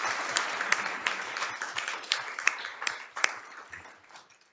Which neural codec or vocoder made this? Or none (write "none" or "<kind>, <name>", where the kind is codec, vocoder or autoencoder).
vocoder, BigVGAN v2